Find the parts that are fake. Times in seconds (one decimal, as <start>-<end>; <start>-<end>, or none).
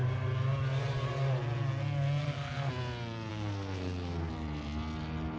2.2-2.7; 3.3-4.3